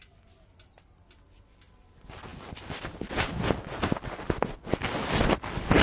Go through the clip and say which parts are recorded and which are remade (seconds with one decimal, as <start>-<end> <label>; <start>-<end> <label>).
0.0-5.8 recorded